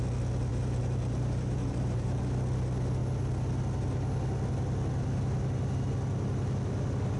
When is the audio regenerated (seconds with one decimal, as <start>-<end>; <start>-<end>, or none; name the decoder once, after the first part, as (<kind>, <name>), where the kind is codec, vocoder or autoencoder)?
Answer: 0.5-2.2 (vocoder, BigVGAN v2)